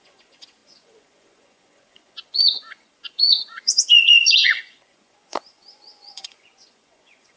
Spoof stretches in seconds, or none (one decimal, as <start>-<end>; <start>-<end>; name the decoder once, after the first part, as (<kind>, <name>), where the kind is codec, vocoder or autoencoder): 0.0-7.4 (vocoder, Vocos)